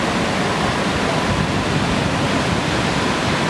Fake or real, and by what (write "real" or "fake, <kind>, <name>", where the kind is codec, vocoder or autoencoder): real